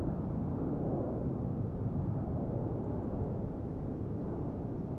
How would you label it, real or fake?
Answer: real